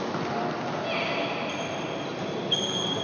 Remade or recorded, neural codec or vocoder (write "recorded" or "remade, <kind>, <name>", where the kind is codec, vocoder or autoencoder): recorded